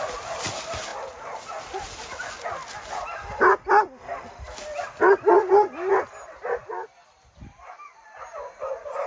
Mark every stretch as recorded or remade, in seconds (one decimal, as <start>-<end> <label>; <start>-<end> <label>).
0.0-9.1 recorded